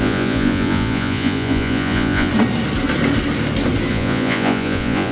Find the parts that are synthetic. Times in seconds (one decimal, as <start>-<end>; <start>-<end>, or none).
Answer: 0.0-2.3; 3.9-5.1